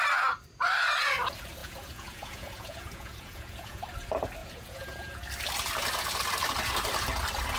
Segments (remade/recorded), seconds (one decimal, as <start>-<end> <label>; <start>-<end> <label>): 0.0-1.6 recorded; 1.6-3.8 remade; 3.8-4.4 recorded; 4.4-5.2 remade; 5.2-7.6 recorded